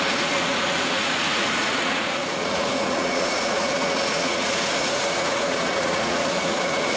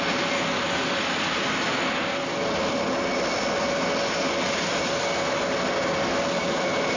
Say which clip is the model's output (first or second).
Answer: first